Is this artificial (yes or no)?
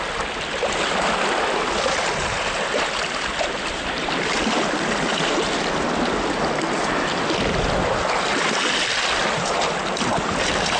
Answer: no